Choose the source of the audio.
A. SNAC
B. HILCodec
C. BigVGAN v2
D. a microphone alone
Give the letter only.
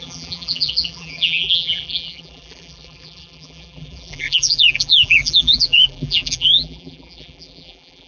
C